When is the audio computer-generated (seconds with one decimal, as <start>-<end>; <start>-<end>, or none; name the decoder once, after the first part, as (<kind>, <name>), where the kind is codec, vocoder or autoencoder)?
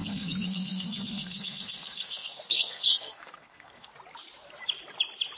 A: 0.0-3.9 (codec, SNAC)